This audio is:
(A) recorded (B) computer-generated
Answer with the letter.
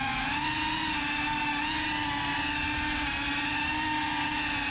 A